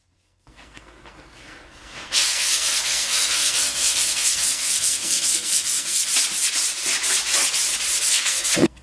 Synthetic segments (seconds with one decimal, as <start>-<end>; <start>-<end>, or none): 0.0-6.1; 8.0-8.8